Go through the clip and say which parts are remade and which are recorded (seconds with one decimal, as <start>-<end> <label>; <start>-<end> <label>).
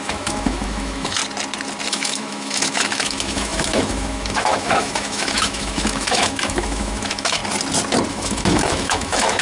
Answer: 0.0-1.2 remade; 1.2-1.9 recorded; 1.9-7.4 remade; 7.4-8.1 recorded; 8.1-9.4 remade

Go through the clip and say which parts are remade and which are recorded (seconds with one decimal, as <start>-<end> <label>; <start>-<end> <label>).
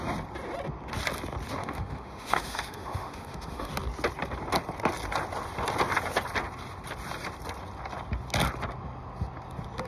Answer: 0.0-1.6 recorded; 1.6-3.7 remade; 3.7-9.9 recorded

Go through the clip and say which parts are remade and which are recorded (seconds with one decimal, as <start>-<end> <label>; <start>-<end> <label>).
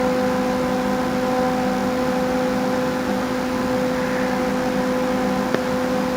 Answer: 0.0-6.2 recorded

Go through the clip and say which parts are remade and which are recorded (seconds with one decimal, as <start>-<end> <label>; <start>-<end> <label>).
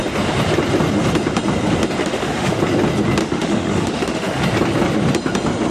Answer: 0.0-2.0 recorded; 2.0-2.6 remade; 2.6-3.2 recorded; 3.2-4.4 remade; 4.4-5.7 recorded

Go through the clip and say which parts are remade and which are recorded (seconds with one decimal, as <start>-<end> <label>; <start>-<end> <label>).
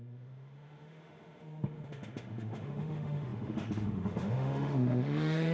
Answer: 0.0-5.5 remade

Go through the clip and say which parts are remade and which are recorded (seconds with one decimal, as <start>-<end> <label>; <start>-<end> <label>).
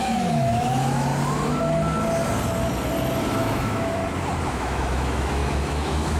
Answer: 0.0-1.1 remade; 1.1-3.4 recorded; 3.4-4.0 remade; 4.0-4.5 recorded; 4.5-6.2 remade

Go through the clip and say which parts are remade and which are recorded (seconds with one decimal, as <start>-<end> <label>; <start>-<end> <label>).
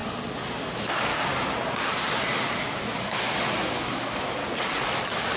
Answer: 0.0-0.6 recorded; 0.6-1.1 remade; 1.1-2.6 recorded; 2.6-4.4 remade; 4.4-4.9 recorded; 4.9-5.4 remade